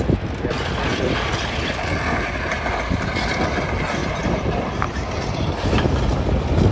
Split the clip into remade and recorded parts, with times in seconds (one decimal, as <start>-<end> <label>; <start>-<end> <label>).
0.0-4.0 recorded; 4.0-5.5 remade; 5.5-6.7 recorded